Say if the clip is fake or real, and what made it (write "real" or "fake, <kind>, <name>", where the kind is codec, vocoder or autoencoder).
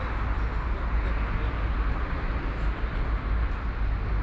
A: real